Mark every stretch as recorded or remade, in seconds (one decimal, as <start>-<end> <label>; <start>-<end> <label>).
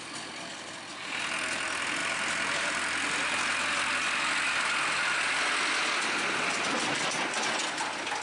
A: 0.0-8.2 recorded